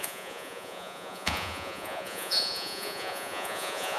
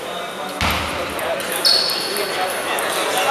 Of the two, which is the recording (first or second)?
second